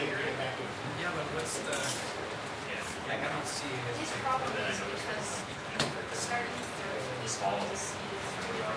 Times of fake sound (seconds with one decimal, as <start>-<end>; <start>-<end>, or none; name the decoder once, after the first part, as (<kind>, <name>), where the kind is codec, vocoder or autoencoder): 2.8-3.6 (codec, HILCodec); 5.4-6.1